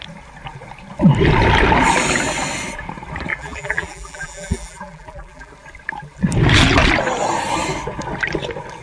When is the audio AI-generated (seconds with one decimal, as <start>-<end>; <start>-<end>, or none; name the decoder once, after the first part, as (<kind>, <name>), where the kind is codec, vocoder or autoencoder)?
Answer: 3.3-5.5 (vocoder, BigVGAN v2)